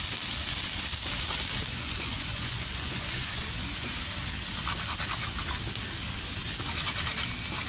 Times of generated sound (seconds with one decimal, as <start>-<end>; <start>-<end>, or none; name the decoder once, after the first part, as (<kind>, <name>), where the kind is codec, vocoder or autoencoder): 1.7-4.0 (vocoder, Vocos)